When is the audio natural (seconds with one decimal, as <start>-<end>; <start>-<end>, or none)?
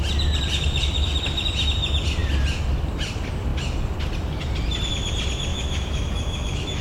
0.0-5.5